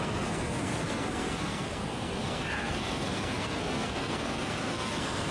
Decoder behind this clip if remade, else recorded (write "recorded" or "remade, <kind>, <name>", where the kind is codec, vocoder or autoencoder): remade, codec, SNAC